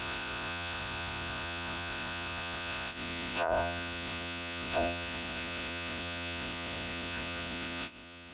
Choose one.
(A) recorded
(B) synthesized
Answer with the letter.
B